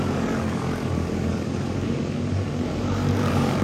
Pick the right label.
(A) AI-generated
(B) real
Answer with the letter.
A